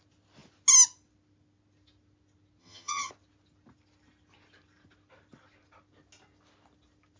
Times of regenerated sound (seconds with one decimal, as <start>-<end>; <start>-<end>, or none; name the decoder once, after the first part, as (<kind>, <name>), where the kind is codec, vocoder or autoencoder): 2.6-3.1 (vocoder, HiFi-GAN)